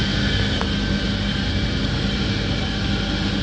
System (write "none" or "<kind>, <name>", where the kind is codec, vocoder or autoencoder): none